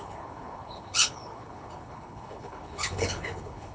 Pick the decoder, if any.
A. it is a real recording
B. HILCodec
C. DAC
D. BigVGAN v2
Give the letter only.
B